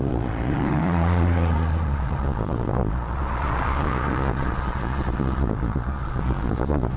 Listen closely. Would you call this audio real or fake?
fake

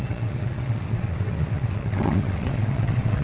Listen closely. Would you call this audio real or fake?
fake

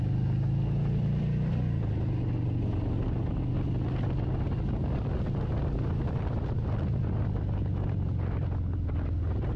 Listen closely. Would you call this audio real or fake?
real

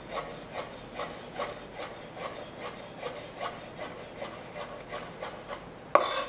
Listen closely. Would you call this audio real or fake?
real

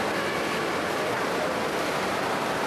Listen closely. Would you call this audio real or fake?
real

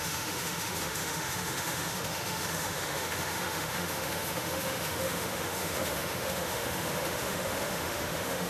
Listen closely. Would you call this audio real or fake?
fake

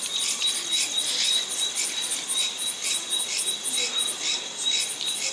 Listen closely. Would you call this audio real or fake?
real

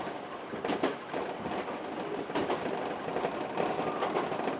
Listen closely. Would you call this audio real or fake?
real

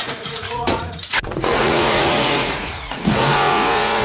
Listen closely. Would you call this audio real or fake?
fake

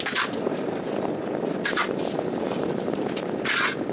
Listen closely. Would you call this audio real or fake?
real